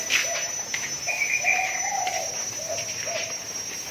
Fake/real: real